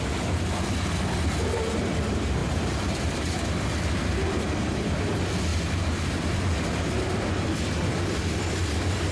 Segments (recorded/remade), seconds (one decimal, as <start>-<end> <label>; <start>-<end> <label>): 0.0-2.4 recorded; 2.4-3.4 remade; 3.4-5.5 recorded; 5.5-6.1 remade; 6.1-9.1 recorded